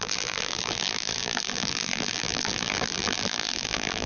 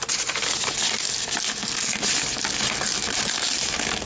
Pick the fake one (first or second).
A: first